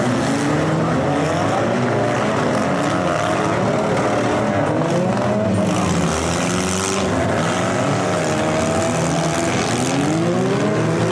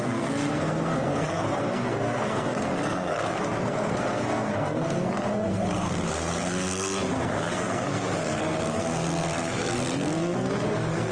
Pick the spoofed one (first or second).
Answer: second